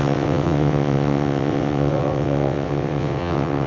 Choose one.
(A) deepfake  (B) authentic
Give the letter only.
A